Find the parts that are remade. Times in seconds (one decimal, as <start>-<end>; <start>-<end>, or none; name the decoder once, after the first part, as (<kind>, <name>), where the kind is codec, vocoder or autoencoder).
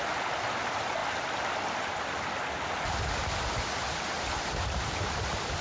none